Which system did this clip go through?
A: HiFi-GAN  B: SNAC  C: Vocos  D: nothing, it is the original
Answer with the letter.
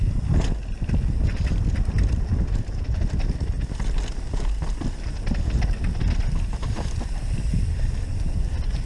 D